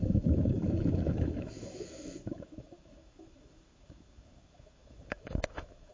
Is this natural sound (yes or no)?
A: no